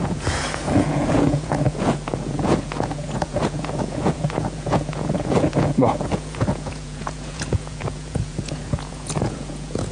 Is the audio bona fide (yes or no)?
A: no